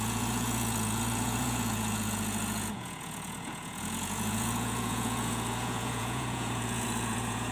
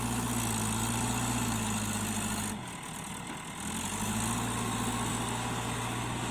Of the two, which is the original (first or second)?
second